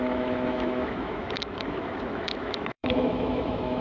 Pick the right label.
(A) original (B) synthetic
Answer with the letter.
B